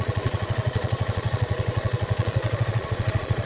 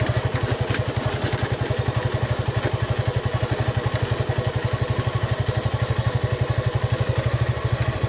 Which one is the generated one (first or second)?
first